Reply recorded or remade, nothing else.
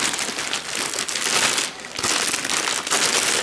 recorded